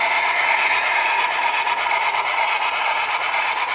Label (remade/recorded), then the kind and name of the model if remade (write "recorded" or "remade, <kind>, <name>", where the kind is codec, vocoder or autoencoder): remade, vocoder, Vocos